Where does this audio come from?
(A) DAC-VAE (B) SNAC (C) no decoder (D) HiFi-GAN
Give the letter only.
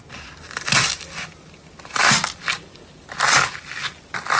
C